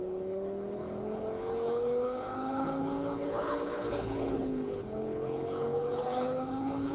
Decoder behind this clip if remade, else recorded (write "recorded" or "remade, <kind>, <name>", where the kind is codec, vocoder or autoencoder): remade, codec, HILCodec